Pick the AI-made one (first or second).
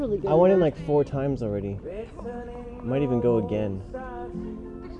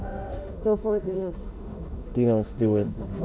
second